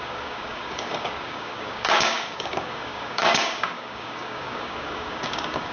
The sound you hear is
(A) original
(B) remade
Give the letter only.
B